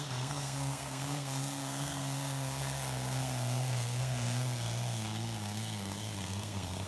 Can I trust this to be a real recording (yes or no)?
no